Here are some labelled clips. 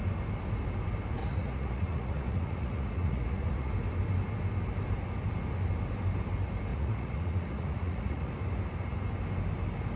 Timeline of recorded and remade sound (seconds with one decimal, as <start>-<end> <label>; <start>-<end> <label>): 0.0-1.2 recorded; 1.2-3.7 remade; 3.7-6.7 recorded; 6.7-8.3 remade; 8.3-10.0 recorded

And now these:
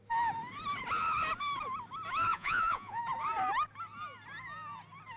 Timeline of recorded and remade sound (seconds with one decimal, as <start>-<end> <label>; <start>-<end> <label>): 0.0-2.3 recorded; 2.3-3.0 remade; 3.0-5.2 recorded

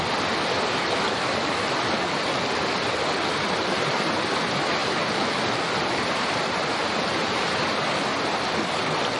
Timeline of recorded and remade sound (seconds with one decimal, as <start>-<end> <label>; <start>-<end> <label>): 0.0-9.2 recorded

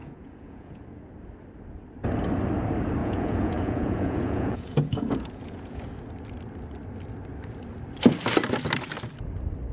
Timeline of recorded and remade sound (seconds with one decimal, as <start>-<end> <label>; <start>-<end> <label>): 0.0-0.8 remade; 0.8-3.0 recorded; 3.0-5.8 remade; 5.8-9.7 recorded

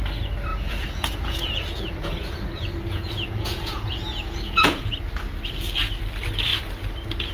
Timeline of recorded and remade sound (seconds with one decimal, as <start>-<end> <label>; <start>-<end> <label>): 0.0-0.5 recorded; 0.5-4.9 remade; 4.9-7.3 recorded